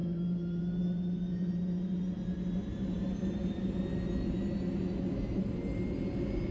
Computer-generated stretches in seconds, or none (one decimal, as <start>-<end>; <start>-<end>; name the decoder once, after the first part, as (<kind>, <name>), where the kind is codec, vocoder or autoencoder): 2.7-3.8 (vocoder, BigVGAN v2)